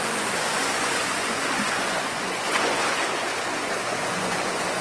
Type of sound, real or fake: fake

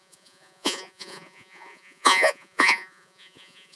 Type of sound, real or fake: fake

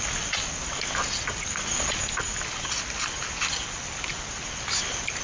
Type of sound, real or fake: real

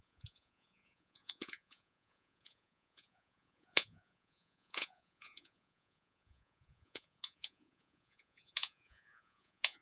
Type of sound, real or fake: fake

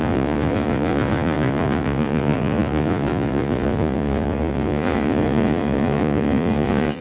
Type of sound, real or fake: fake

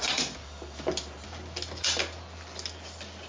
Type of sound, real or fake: real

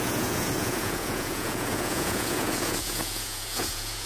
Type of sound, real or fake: fake